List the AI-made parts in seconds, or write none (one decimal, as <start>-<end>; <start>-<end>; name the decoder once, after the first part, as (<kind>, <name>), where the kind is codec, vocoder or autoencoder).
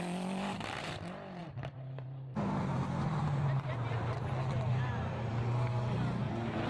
1.4-4.3 (vocoder, BigVGAN v2); 4.7-5.3